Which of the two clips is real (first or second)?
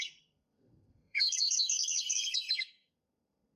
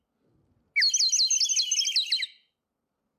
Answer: second